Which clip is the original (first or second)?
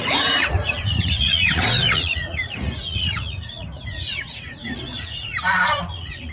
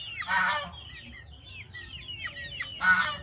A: second